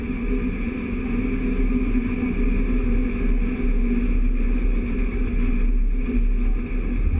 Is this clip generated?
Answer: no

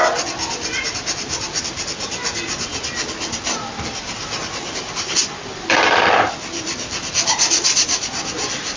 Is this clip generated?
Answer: no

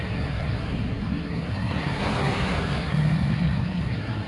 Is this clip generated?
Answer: yes